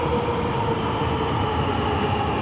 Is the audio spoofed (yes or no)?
no